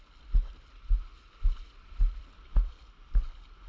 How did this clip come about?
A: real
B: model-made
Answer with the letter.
A